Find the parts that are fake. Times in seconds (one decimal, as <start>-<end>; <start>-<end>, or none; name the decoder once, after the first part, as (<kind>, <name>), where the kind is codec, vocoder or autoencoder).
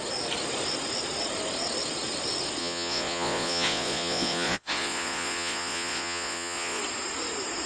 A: 2.6-6.8 (vocoder, Vocos)